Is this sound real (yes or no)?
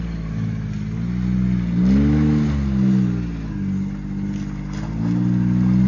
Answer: yes